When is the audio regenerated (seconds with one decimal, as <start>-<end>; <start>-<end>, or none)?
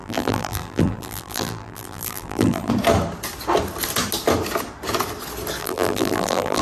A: 0.0-2.7; 5.6-6.6